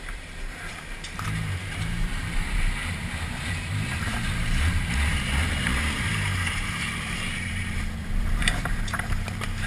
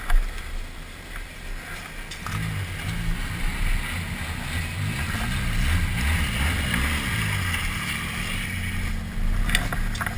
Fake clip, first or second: first